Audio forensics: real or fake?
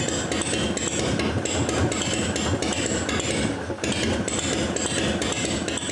real